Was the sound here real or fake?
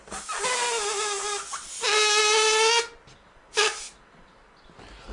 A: real